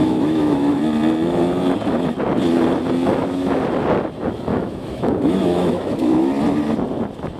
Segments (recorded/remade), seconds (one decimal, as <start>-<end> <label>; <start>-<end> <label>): 0.0-0.8 remade; 0.8-3.1 recorded; 3.1-3.6 remade; 3.6-4.5 recorded; 4.5-6.3 remade; 6.3-7.4 recorded